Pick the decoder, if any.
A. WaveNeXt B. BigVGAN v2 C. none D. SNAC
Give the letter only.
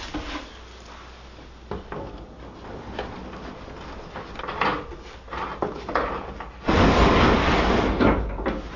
C